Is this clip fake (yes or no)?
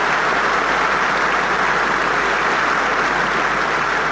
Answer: no